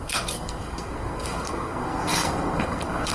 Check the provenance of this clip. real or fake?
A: fake